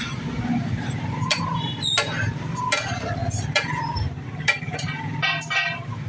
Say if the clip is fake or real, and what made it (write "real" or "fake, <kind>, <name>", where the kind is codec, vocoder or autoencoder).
fake, vocoder, BigVGAN v2